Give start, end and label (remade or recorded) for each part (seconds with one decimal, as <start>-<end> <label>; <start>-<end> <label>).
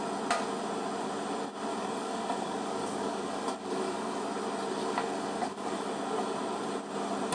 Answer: 0.0-1.7 recorded; 1.7-4.2 remade; 4.2-4.8 recorded; 4.8-5.9 remade; 5.9-7.3 recorded